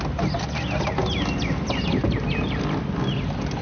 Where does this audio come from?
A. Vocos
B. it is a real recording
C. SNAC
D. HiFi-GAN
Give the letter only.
B